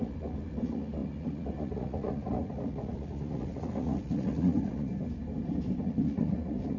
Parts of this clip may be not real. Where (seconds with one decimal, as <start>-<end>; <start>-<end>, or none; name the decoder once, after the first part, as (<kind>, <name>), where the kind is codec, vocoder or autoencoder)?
0.0-4.9 (vocoder, Vocos); 5.8-6.8